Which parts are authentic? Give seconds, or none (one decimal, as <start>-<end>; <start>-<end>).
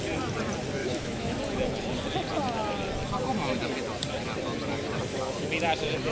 0.0-0.8; 1.4-6.1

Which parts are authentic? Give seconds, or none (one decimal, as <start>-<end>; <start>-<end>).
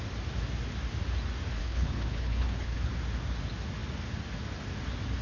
0.0-1.6; 2.9-5.2